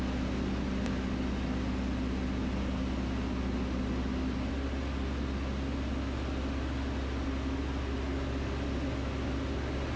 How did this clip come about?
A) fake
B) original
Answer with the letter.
B